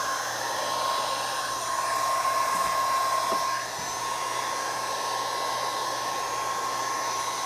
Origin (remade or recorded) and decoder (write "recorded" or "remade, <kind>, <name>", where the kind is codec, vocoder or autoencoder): recorded